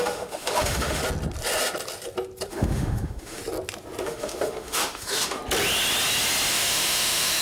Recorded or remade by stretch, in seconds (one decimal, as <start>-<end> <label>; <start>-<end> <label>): 0.0-1.0 remade; 1.0-2.5 recorded; 2.5-3.4 remade; 3.4-4.0 recorded; 4.0-5.4 remade; 5.4-6.5 recorded; 6.5-7.4 remade

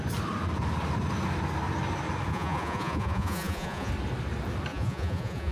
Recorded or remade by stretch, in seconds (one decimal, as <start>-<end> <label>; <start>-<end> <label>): 0.0-2.3 recorded; 2.3-3.9 remade; 3.9-4.7 recorded; 4.7-5.5 remade

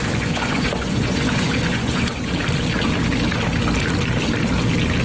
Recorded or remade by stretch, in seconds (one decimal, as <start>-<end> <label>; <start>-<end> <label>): 0.0-2.3 remade; 2.3-5.0 recorded

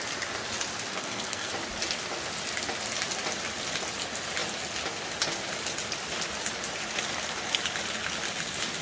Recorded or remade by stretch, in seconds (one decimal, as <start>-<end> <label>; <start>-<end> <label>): 0.0-0.9 recorded; 0.9-1.5 remade; 1.5-8.8 recorded

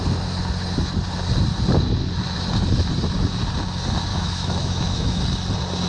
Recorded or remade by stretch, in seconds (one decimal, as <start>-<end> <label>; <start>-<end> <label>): 0.0-4.1 recorded; 4.1-5.2 remade; 5.2-5.9 recorded